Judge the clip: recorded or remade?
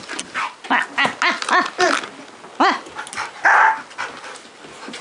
recorded